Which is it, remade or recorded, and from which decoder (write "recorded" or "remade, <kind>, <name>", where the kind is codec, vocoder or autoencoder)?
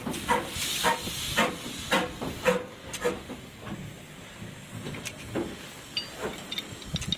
recorded